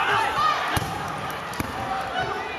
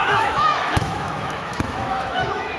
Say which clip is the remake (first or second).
second